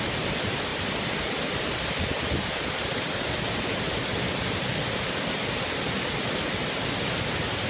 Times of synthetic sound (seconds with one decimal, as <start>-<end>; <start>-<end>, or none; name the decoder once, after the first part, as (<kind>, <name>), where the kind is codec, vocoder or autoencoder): none